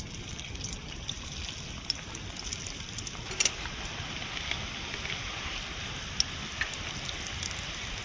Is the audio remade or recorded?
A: recorded